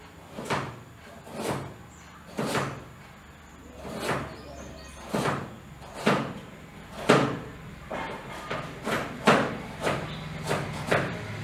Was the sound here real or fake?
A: real